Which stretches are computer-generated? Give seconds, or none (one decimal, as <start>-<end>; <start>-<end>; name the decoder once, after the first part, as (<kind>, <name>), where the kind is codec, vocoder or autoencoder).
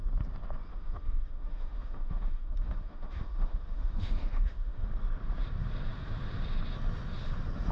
0.7-4.9 (autoencoder, DAC-VAE)